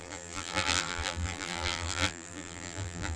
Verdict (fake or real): fake